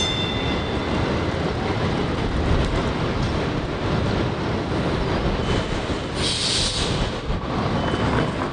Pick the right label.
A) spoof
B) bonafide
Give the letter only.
B